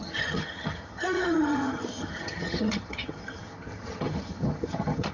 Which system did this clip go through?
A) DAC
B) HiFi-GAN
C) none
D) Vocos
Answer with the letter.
B